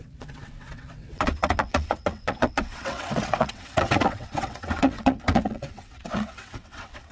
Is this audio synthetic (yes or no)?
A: yes